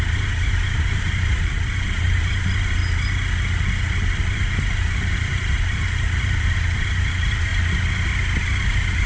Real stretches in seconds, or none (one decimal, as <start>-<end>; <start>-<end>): 2.8-3.9; 7.5-8.7